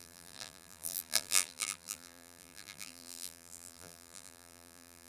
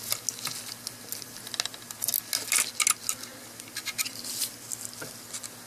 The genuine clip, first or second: second